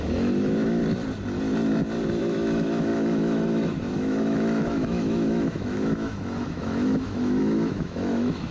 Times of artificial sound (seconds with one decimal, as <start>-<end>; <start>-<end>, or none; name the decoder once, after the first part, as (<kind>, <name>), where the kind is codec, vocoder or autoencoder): 0.0-0.8 (autoencoder, DAC-VAE); 2.2-8.5